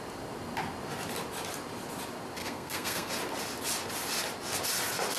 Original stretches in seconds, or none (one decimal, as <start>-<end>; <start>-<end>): 0.0-2.4; 3.1-5.2